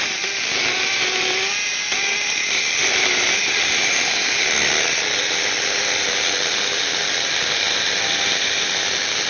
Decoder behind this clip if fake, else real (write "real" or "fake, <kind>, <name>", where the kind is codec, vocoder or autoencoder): real